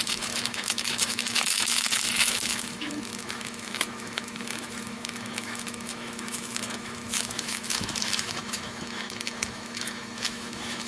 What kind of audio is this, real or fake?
fake